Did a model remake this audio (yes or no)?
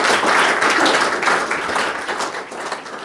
no